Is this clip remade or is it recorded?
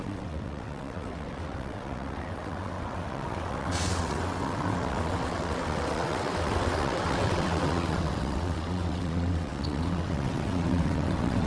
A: remade